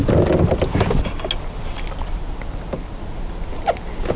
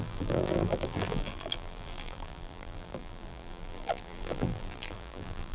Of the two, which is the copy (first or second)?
second